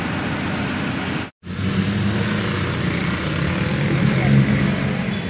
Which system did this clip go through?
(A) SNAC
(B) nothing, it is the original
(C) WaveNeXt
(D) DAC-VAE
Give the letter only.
B